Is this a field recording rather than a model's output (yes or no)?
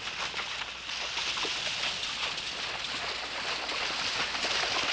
yes